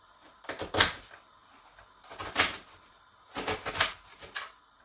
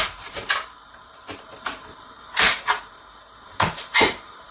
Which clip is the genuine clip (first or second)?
first